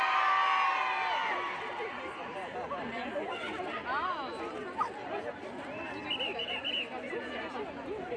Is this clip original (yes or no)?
yes